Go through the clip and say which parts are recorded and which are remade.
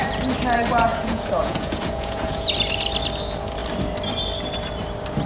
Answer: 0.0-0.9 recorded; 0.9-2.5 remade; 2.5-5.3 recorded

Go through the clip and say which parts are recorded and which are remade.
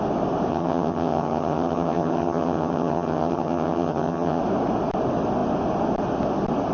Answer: 0.0-0.5 recorded; 0.5-4.4 remade; 4.4-6.7 recorded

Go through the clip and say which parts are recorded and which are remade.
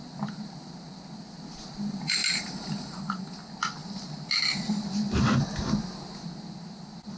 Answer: 0.0-2.2 recorded; 2.2-3.0 remade; 3.0-3.8 recorded; 3.8-5.4 remade; 5.4-7.2 recorded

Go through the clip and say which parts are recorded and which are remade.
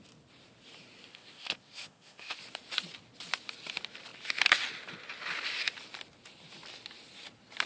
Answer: 0.0-1.1 recorded; 1.1-2.4 remade; 2.4-7.7 recorded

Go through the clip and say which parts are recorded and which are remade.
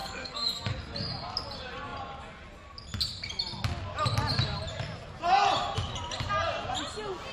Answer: 0.0-0.7 remade; 0.7-7.3 recorded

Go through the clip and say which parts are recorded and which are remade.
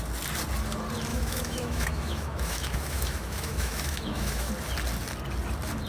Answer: 0.0-1.1 recorded; 1.1-4.5 remade; 4.5-5.9 recorded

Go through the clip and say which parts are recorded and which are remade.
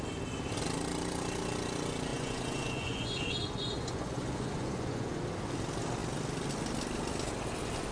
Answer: 0.0-2.1 recorded; 2.1-5.2 remade; 5.2-7.9 recorded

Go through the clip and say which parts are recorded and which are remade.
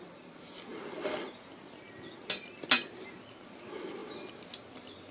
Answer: 0.0-5.1 recorded